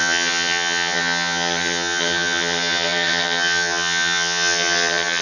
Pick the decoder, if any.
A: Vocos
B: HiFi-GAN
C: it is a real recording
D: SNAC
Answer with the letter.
B